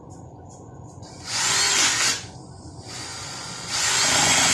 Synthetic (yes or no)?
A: yes